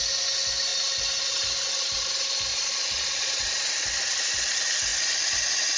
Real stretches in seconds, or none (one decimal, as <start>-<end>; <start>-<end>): 0.0-2.5; 3.7-5.8

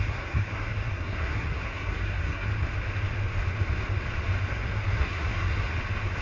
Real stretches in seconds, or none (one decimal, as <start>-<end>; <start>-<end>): 2.5-4.5; 5.7-6.2

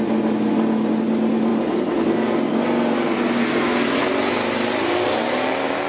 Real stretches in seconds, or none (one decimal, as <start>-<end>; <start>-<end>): 0.0-5.9